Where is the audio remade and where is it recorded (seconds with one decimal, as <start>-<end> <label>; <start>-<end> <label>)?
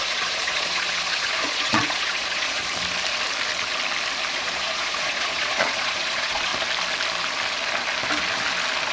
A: 0.0-2.6 remade; 2.6-4.3 recorded; 4.3-6.5 remade; 6.5-8.9 recorded